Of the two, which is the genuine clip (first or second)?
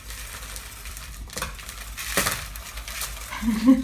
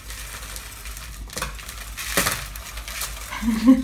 second